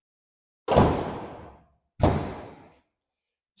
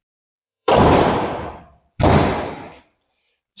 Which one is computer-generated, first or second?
second